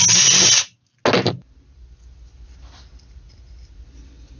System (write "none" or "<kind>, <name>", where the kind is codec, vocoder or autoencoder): none